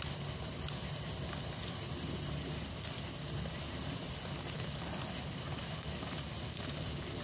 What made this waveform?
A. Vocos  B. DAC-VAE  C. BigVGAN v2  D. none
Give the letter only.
D